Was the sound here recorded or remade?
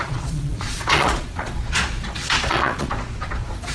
remade